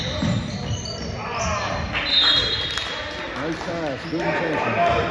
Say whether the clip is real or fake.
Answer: real